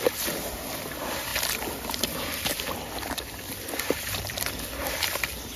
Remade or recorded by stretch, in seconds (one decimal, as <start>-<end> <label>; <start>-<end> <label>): 0.0-5.6 recorded